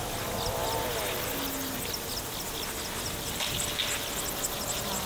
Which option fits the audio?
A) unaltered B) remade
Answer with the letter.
A